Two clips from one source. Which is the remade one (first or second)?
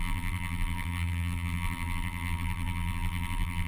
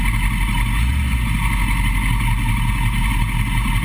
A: first